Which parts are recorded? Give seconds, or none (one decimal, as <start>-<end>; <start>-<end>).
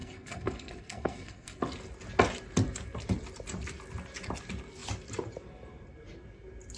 1.6-6.8